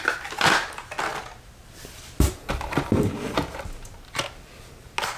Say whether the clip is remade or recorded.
recorded